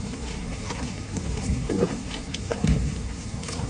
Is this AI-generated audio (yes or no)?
yes